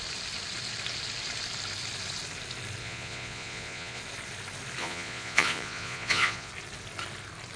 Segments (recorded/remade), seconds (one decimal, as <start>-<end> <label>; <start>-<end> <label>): 0.0-2.8 recorded; 2.8-4.0 remade; 4.0-4.8 recorded; 4.8-6.5 remade; 6.5-7.6 recorded